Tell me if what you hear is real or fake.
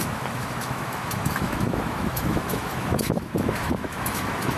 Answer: fake